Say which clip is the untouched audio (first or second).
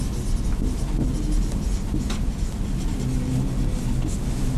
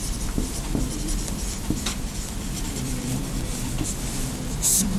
first